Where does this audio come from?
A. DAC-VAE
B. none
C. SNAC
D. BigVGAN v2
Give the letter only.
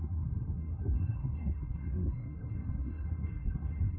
C